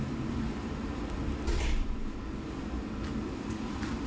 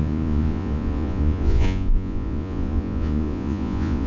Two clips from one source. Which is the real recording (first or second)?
first